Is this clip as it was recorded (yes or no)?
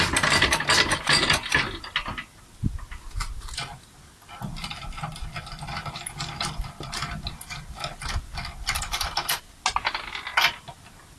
yes